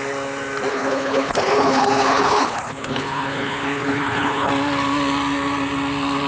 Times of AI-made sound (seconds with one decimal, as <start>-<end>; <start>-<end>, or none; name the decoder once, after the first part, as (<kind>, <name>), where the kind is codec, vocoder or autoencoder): 0.7-4.5 (codec, HILCodec)